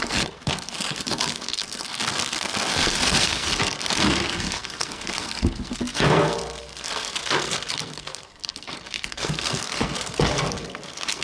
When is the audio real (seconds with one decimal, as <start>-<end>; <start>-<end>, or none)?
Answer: none